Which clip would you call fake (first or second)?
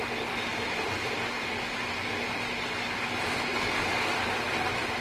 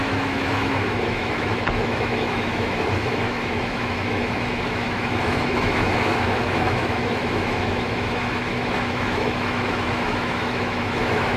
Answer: second